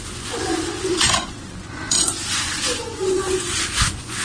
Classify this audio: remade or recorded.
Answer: remade